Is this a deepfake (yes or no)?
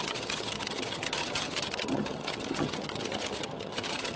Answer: yes